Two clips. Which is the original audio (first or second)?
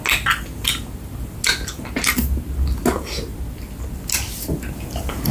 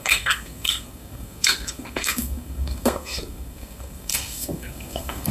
first